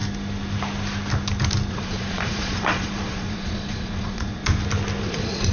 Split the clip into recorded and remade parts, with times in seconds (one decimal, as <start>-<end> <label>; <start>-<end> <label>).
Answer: 0.0-1.7 recorded; 1.7-4.4 remade; 4.4-5.0 recorded; 5.0-5.5 remade